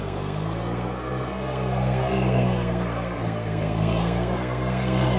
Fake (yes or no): yes